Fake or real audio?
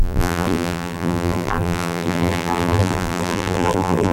fake